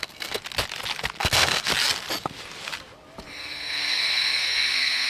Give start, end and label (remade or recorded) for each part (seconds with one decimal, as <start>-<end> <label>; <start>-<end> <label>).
0.0-0.4 remade; 0.4-1.2 recorded; 1.2-1.7 remade; 1.7-3.4 recorded; 3.4-5.1 remade